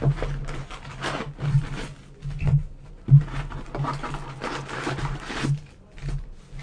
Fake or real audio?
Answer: real